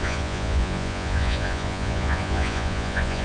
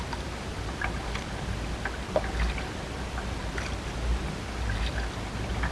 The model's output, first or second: first